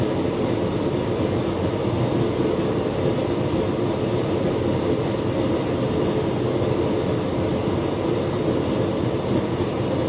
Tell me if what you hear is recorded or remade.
recorded